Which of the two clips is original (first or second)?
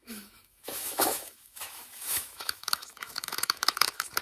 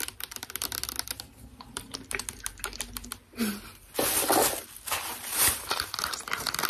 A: second